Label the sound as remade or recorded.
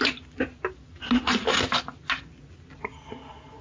recorded